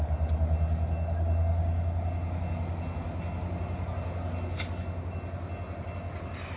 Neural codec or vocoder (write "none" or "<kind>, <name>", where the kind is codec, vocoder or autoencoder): none